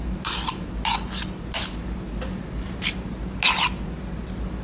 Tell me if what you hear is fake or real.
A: real